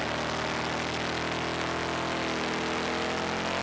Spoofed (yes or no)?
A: no